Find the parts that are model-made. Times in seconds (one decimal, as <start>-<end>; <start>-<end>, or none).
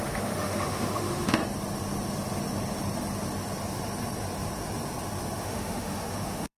0.0-1.4; 5.4-6.6